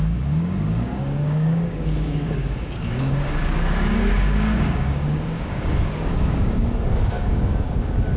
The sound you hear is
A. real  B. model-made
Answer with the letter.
B